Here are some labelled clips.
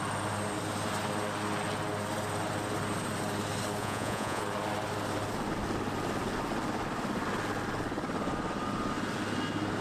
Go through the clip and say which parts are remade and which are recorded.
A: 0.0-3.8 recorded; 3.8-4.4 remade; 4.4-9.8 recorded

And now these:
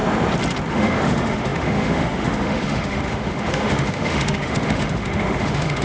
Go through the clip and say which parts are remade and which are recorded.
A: 0.0-0.7 recorded; 0.7-5.8 remade

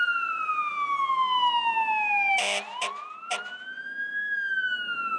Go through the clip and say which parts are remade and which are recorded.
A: 0.0-5.2 recorded

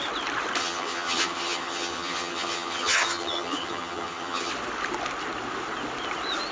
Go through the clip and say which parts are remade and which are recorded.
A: 0.0-0.6 recorded; 0.6-4.5 remade; 4.5-6.5 recorded

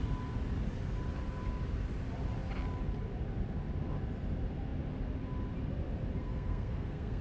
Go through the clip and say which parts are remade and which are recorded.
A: 0.0-6.2 recorded; 6.2-7.2 remade

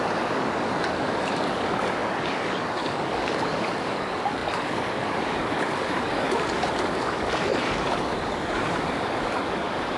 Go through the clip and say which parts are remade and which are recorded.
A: 0.0-10.0 remade

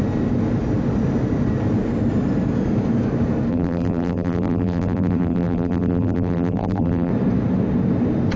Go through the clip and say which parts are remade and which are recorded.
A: 0.0-3.5 recorded; 3.5-7.1 remade; 7.1-8.4 recorded